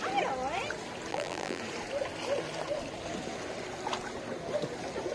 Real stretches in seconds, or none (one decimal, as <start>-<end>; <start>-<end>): 0.0-1.1; 1.6-5.1